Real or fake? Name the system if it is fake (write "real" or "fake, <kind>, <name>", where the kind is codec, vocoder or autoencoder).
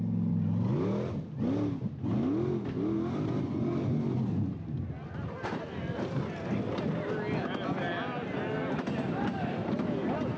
real